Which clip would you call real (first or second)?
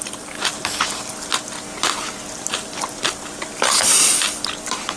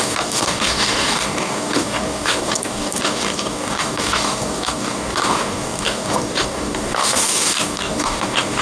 first